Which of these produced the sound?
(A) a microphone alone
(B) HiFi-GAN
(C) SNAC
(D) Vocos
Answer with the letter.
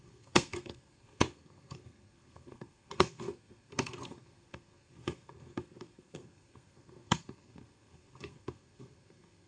C